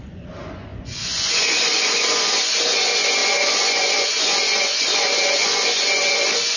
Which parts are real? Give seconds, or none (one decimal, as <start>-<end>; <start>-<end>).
none